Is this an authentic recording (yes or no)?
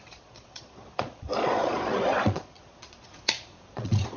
no